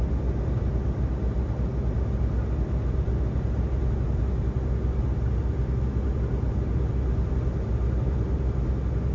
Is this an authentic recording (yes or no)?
yes